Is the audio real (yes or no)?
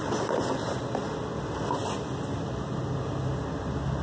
yes